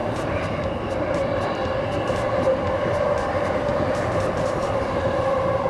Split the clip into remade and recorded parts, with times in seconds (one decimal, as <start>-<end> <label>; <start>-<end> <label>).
0.0-0.6 remade; 0.6-3.7 recorded; 3.7-5.2 remade; 5.2-5.7 recorded